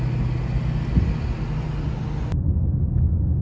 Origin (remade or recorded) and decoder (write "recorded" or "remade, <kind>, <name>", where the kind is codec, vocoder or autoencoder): recorded